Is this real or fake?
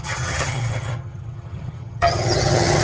fake